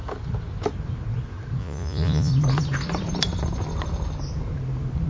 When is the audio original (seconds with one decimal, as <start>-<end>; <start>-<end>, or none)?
0.0-1.6; 2.3-5.1